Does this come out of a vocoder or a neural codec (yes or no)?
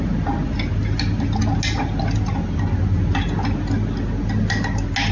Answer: no